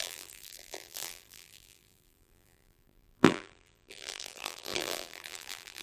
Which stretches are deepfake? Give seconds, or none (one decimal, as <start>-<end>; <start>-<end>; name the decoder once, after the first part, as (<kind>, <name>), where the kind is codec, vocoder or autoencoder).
0.0-5.8 (vocoder, BigVGAN v2)

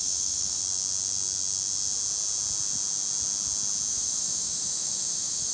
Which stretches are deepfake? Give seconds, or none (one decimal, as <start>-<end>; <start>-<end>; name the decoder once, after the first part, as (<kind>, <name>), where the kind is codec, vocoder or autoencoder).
0.0-0.6 (autoencoder, DAC-VAE); 3.9-5.5

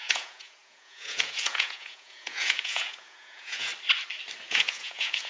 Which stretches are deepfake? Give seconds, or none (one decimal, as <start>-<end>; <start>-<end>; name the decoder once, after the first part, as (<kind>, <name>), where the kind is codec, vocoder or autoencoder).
0.0-3.7 (vocoder, Vocos); 4.5-5.3

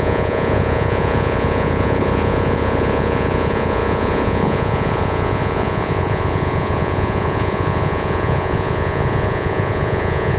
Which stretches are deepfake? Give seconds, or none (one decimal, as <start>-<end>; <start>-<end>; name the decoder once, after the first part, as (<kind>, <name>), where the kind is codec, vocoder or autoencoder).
0.0-10.4 (vocoder, Vocos)

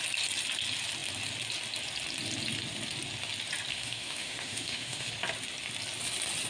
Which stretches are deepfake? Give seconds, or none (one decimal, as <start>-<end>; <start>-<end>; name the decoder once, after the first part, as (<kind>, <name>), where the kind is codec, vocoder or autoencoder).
3.7-5.1 (autoencoder, DAC-VAE)

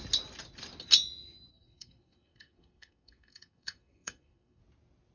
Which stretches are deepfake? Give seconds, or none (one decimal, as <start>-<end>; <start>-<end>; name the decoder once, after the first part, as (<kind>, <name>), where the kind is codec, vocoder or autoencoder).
1.5-4.6 (codec, SNAC)